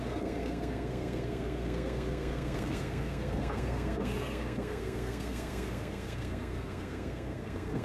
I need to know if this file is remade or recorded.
remade